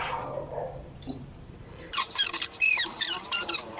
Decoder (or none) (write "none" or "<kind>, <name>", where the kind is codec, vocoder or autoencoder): vocoder, BigVGAN v2